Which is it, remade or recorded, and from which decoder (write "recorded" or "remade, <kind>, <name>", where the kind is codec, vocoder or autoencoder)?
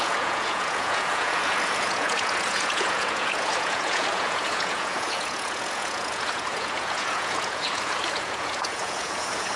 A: remade, vocoder, Vocos